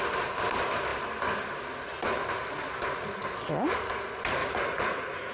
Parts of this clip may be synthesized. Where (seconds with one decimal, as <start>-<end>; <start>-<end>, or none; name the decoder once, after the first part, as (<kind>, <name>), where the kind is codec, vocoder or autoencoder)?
4.4-5.3 (vocoder, Vocos)

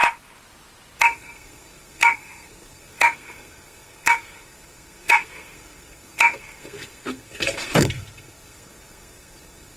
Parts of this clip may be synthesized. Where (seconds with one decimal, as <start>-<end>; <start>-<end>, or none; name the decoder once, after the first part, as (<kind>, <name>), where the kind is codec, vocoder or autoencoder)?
1.0-9.8 (codec, SNAC)

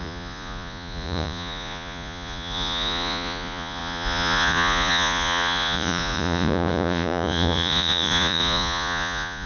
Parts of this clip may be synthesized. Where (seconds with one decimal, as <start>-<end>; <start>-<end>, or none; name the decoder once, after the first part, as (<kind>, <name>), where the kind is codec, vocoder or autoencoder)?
0.0-9.5 (vocoder, Vocos)

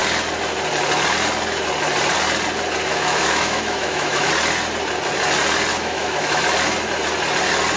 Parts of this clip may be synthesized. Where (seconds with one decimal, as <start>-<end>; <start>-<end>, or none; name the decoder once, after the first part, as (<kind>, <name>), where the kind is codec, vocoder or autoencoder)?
2.9-4.3 (autoencoder, DAC-VAE); 5.7-6.4

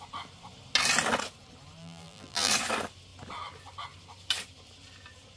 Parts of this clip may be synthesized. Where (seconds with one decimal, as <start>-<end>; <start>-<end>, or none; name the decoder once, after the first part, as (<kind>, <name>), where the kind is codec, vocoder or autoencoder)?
1.8-2.5 (vocoder, BigVGAN v2)